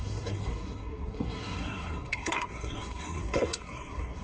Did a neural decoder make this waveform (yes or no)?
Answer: yes